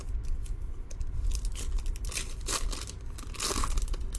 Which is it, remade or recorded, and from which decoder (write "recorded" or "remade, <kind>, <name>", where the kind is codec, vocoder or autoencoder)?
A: recorded